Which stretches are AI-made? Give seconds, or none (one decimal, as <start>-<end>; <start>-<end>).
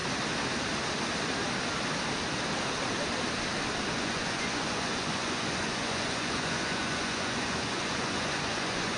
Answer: 3.9-9.0